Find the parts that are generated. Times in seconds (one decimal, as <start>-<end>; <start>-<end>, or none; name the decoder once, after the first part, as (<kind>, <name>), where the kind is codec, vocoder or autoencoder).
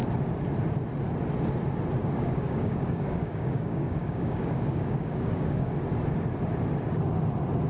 2.0-5.7 (codec, DAC)